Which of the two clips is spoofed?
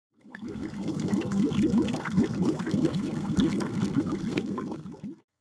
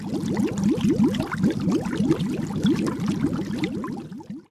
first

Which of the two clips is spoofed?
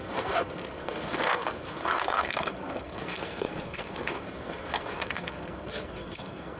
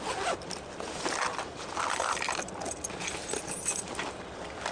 first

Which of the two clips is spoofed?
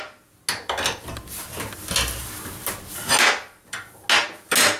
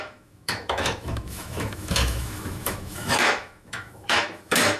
second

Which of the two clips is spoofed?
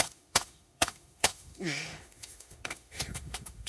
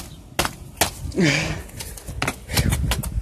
first